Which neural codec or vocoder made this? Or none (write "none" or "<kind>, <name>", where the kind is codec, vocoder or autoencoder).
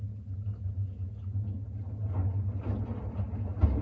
none